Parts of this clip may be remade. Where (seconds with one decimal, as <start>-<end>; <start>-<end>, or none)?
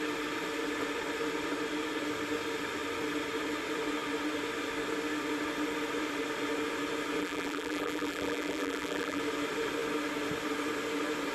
7.2-9.2